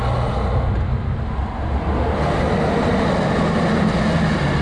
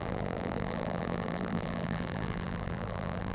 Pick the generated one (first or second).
second